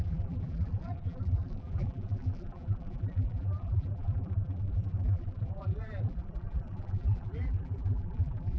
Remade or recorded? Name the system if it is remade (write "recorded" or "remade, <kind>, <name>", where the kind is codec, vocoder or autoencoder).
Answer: remade, vocoder, BigVGAN v2